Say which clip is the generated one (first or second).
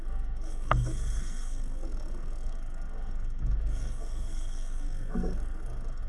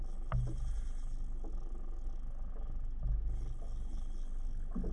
first